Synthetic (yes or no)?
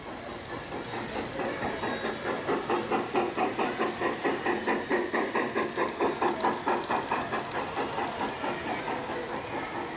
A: no